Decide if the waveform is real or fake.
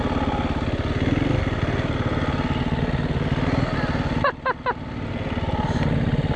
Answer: real